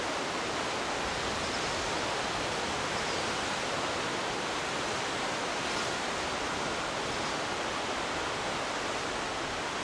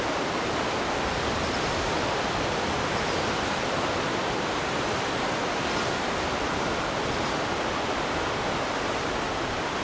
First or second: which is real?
first